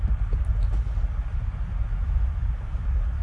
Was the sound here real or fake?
real